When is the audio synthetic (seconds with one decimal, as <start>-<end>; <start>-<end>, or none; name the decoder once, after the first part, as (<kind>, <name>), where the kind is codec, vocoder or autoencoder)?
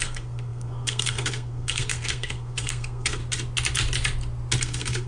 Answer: 0.0-3.2 (codec, SNAC); 4.6-5.1